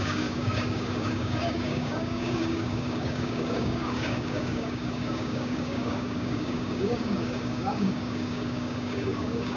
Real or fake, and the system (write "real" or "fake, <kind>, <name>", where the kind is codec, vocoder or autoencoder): fake, codec, DAC